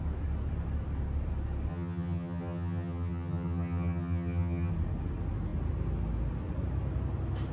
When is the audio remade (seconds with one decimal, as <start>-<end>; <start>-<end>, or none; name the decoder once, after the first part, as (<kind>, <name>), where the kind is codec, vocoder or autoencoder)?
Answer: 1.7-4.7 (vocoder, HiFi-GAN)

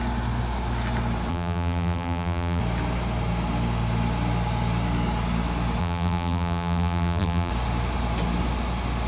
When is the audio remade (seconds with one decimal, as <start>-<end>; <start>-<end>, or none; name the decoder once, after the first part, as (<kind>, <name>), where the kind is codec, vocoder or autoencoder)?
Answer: 1.3-2.6 (vocoder, BigVGAN v2); 5.8-7.5

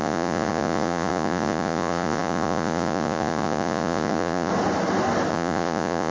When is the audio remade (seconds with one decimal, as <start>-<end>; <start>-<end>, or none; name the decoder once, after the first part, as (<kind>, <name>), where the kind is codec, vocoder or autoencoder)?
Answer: 0.0-4.5 (vocoder, Vocos); 5.3-6.1